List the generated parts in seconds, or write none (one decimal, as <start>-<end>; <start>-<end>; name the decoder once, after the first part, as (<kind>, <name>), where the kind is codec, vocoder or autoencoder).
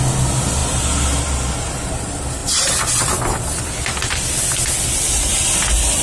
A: none